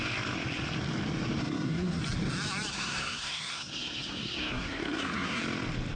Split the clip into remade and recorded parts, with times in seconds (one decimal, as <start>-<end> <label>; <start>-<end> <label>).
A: 0.0-1.4 recorded; 1.4-2.0 remade; 2.0-2.7 recorded; 2.7-5.4 remade; 5.4-6.0 recorded